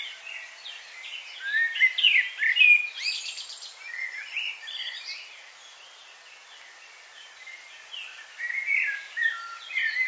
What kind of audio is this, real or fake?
real